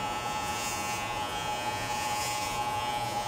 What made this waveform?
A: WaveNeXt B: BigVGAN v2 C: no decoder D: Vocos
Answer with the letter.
D